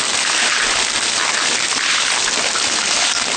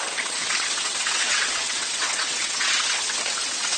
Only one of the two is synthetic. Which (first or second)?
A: second